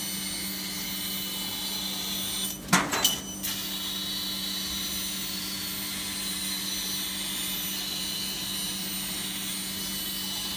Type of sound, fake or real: real